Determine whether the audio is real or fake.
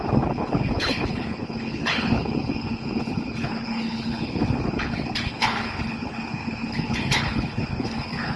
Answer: fake